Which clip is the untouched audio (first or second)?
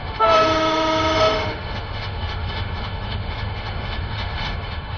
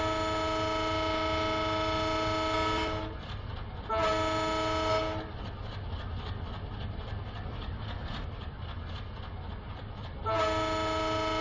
second